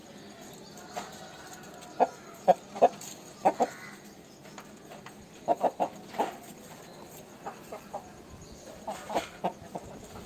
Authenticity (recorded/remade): recorded